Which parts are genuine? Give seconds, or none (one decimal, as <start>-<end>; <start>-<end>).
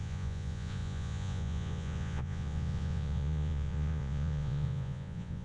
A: none